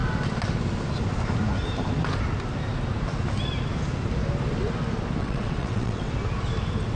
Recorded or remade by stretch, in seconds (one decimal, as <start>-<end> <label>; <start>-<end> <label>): 0.0-5.2 recorded; 5.2-6.1 remade; 6.1-7.0 recorded